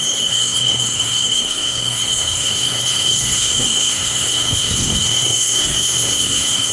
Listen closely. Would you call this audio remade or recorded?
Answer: remade